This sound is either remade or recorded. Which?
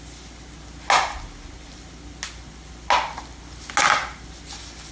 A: recorded